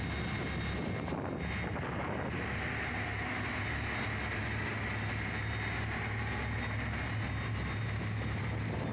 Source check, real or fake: real